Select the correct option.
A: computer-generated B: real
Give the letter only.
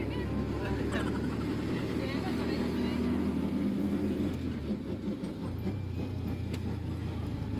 B